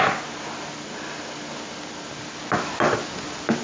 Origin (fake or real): real